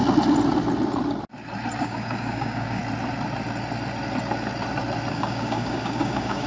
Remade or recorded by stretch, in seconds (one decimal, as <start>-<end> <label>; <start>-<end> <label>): 0.0-1.8 recorded; 1.8-2.8 remade; 2.8-5.1 recorded; 5.1-6.5 remade